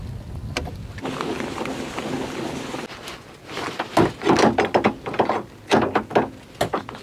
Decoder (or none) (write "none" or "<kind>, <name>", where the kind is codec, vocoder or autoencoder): none